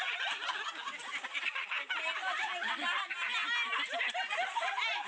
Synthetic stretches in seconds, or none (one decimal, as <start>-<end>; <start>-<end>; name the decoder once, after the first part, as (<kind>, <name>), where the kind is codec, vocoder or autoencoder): none